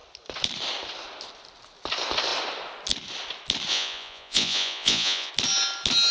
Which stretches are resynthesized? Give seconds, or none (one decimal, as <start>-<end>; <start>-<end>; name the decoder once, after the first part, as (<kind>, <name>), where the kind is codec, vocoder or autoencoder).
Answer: 3.7-5.3 (vocoder, Vocos)